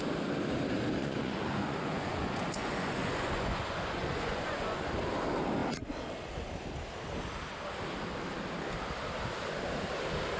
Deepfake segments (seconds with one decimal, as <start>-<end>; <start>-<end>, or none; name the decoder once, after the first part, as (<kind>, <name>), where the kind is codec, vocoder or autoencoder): 1.0-4.9 (vocoder, Vocos)